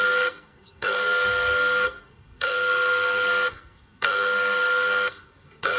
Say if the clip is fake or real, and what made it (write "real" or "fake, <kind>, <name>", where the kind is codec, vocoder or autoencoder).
fake, codec, SNAC